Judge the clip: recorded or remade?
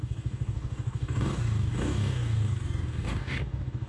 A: remade